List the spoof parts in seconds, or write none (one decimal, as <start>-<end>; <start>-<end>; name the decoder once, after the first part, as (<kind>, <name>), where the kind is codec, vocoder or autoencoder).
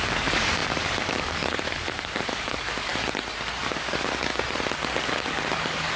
0.0-2.9 (codec, DAC); 3.6-4.3; 5.0-6.0